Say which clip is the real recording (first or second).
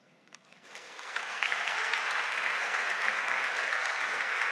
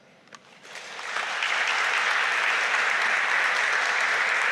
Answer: second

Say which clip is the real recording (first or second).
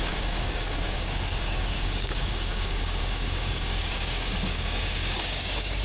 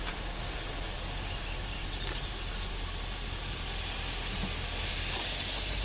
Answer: second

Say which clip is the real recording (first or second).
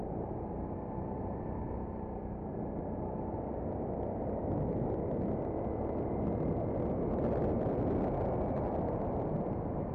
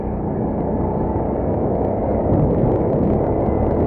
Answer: first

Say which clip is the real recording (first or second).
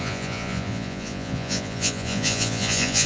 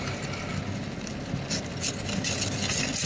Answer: second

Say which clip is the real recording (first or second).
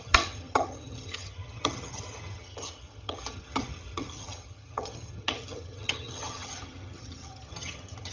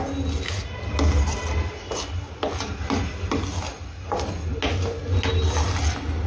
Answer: second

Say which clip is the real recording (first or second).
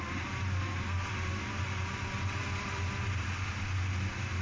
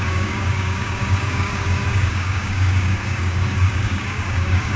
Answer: first